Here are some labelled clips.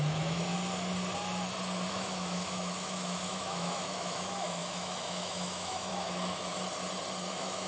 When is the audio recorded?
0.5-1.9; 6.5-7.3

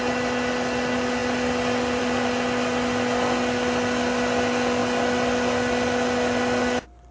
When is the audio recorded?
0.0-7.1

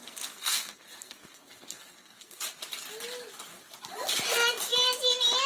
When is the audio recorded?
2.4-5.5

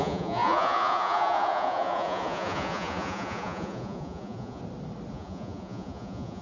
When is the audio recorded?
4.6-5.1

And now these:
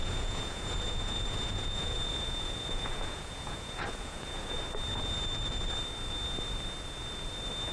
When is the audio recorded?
4.6-7.7

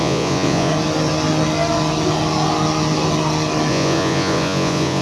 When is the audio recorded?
0.7-3.7

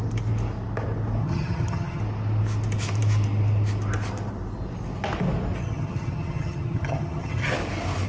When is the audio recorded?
0.0-1.2; 2.0-5.6; 7.5-8.1